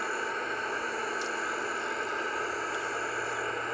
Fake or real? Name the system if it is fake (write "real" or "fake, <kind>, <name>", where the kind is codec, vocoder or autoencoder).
real